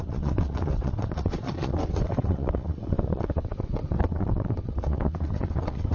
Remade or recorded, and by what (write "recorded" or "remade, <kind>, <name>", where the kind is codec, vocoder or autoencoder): remade, vocoder, WaveNeXt